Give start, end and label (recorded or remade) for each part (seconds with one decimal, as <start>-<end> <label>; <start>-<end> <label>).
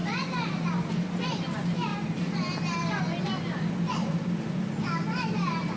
0.0-5.8 recorded